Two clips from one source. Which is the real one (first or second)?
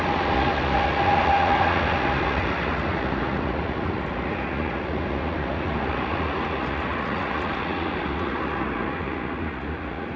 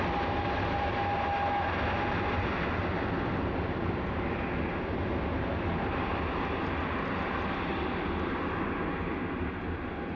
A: second